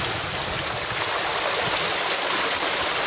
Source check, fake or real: real